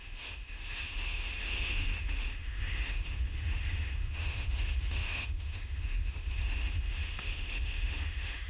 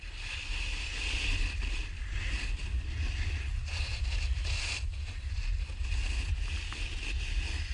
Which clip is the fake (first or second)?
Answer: first